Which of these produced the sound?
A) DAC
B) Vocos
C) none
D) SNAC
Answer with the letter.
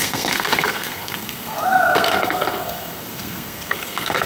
D